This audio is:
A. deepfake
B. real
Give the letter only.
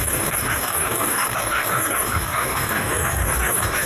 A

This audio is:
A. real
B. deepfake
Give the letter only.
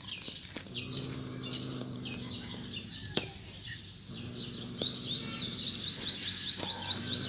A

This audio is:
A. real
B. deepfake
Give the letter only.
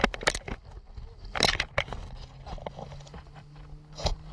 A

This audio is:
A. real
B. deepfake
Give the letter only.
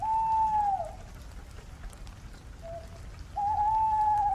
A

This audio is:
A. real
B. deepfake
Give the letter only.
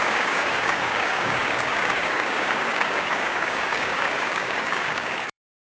B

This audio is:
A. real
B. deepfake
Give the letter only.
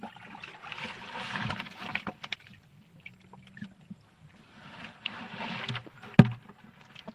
A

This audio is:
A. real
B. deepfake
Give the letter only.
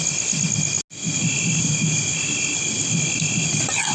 A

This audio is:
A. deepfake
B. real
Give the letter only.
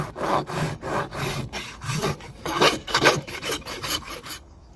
A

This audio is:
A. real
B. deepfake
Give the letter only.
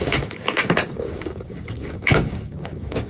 B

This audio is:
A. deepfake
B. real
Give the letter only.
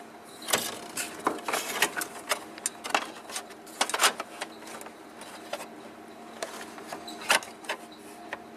B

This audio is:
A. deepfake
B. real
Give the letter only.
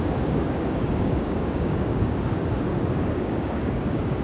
A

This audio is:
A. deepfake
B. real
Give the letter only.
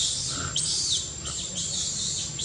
B